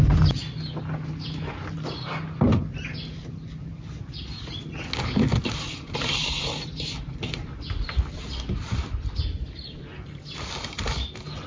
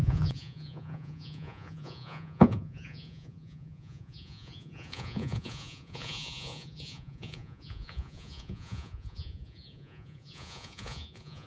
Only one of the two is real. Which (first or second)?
first